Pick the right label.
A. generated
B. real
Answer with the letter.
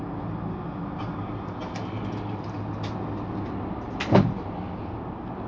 B